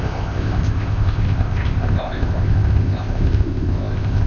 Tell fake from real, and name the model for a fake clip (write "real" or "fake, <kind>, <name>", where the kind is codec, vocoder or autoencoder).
fake, codec, ZipCodec